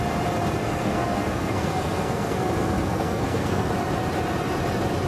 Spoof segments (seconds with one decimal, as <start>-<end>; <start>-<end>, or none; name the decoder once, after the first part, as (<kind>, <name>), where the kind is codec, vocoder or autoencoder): 0.6-3.7 (codec, SNAC)